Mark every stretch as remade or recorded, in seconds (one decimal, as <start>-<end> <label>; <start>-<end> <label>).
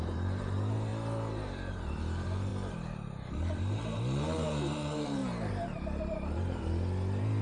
0.0-0.9 remade; 0.9-1.7 recorded; 1.7-2.5 remade; 2.5-3.3 recorded; 3.3-7.4 remade